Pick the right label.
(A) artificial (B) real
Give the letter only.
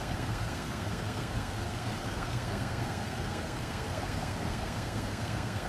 A